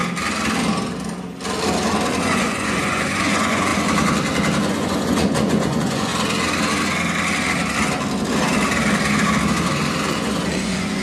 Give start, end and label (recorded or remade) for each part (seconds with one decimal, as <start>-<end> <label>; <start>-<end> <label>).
0.0-2.2 recorded; 2.2-3.7 remade; 3.7-4.7 recorded; 4.7-6.1 remade; 6.1-10.1 recorded; 10.1-11.0 remade